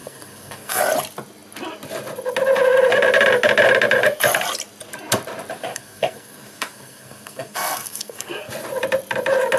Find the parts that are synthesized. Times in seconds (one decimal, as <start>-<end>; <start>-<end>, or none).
0.0-0.8; 5.7-8.5